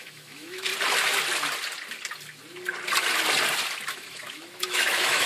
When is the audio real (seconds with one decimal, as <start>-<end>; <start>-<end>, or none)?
0.7-3.9